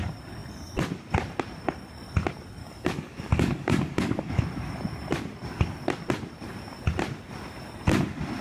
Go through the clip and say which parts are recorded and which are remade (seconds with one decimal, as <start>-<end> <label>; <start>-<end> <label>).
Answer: 0.0-2.6 recorded; 2.6-4.4 remade; 4.4-8.4 recorded